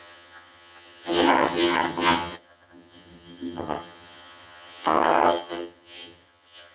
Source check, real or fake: fake